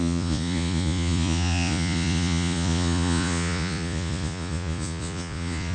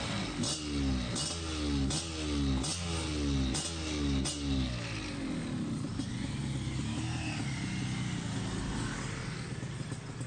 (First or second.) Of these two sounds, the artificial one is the first